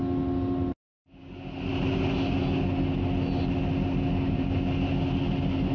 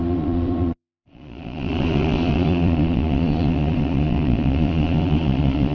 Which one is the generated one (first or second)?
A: second